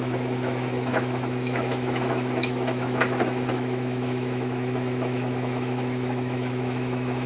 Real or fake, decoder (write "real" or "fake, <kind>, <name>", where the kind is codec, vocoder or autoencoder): fake, autoencoder, DAC-VAE